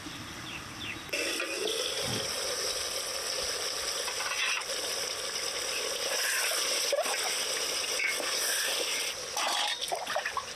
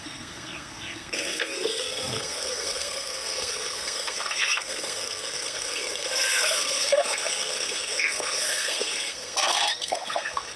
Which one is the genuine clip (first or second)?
first